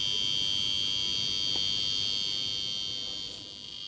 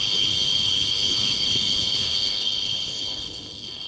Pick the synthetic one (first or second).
second